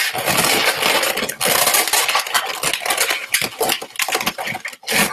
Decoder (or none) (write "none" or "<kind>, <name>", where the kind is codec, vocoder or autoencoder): none